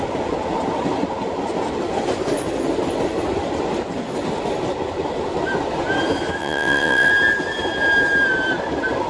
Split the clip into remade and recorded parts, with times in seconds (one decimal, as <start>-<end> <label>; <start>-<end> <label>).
0.0-6.4 recorded; 6.4-7.1 remade; 7.1-9.1 recorded